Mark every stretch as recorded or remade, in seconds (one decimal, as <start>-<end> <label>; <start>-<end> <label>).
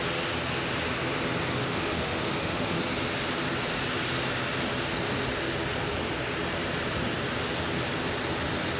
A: 0.0-1.6 recorded; 1.6-2.8 remade; 2.8-8.8 recorded